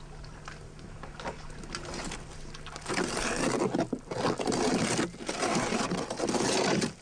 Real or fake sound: real